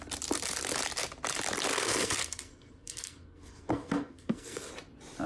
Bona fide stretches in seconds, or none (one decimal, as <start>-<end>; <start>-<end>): 0.0-1.7; 4.7-5.3